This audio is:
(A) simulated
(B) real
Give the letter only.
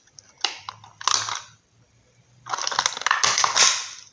B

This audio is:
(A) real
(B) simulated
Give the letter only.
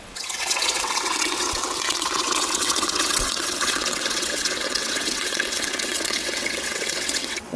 B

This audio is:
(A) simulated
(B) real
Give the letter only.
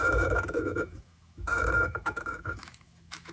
A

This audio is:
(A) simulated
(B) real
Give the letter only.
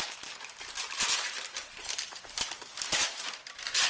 B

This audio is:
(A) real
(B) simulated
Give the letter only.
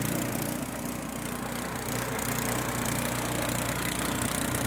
A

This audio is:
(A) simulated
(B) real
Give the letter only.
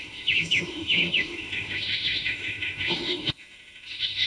A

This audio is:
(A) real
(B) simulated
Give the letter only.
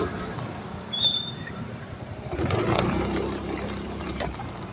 B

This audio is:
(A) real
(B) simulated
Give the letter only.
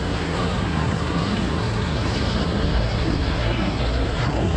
B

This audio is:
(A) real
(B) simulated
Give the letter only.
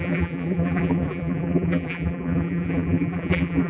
B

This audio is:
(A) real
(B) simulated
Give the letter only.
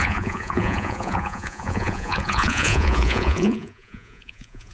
B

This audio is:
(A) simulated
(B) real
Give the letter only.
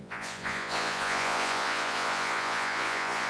A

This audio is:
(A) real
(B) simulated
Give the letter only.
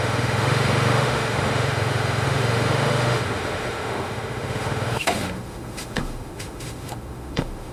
B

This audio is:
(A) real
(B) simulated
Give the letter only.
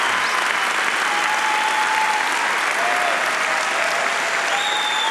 A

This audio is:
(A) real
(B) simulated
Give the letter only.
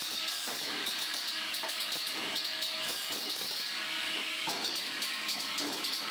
B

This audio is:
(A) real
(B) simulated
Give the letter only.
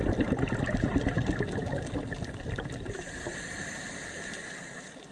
B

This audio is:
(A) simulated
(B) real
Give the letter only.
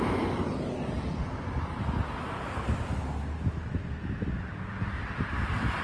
B